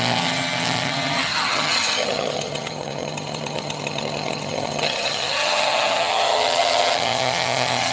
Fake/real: fake